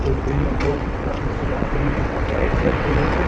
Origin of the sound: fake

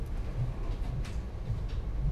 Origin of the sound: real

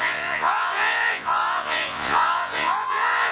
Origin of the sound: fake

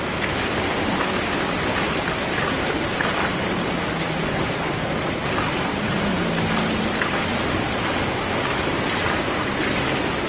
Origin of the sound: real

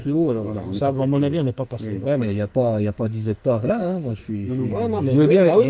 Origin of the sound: fake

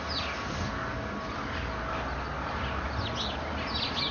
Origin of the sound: real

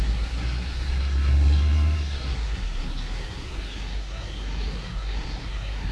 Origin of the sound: fake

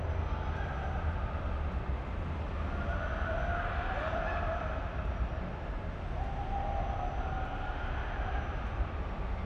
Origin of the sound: real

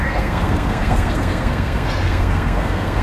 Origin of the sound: fake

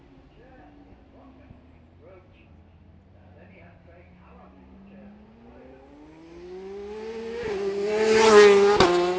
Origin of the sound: real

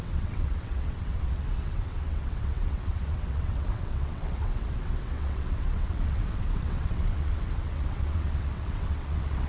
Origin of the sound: fake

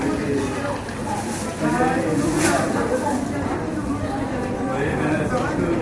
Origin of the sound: real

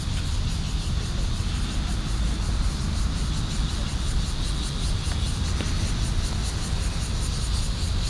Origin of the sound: real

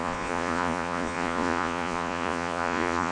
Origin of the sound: fake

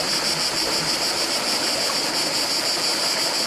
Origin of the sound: real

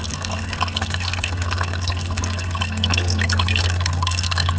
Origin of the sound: fake